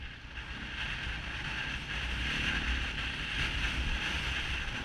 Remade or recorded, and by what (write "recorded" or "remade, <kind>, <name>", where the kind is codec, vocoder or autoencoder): recorded